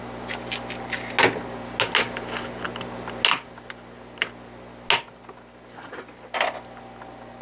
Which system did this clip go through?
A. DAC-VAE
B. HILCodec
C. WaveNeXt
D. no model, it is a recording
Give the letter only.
D